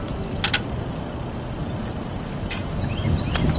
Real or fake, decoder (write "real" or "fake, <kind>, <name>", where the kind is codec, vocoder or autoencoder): real